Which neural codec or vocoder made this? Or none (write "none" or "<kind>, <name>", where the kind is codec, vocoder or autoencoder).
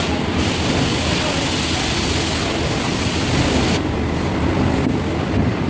none